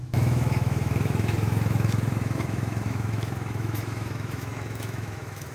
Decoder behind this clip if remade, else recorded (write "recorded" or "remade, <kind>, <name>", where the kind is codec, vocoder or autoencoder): remade, autoencoder, DAC-VAE